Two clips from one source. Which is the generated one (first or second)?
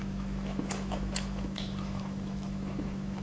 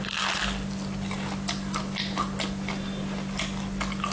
first